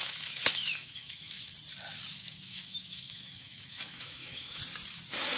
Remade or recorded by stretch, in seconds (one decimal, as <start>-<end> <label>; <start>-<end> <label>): 0.0-1.5 remade; 1.5-2.1 recorded; 2.1-4.6 remade; 4.6-5.4 recorded